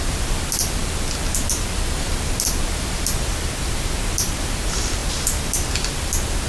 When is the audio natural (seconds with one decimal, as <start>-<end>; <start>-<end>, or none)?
0.0-6.5